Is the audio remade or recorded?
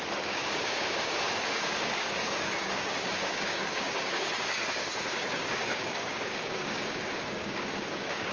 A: remade